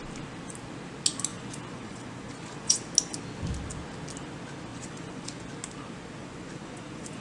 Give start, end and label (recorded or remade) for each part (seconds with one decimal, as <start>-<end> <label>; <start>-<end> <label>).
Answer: 0.0-1.3 recorded; 1.3-2.8 remade; 2.8-4.7 recorded; 4.7-5.5 remade; 5.5-6.2 recorded; 6.2-7.2 remade